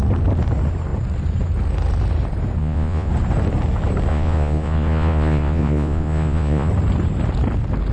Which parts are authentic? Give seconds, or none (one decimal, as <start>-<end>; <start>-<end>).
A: 0.0-2.6; 3.1-4.1; 6.7-7.9